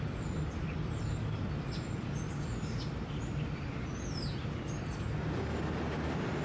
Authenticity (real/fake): fake